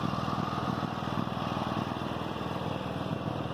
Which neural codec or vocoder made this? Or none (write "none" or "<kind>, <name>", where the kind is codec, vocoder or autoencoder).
vocoder, BigVGAN v2